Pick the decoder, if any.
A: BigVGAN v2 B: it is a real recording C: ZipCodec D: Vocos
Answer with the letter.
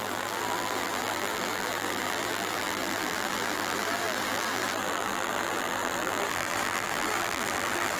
A